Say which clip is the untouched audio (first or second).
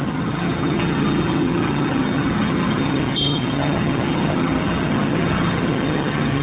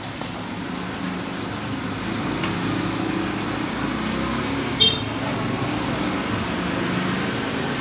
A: second